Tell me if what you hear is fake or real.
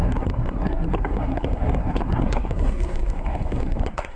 fake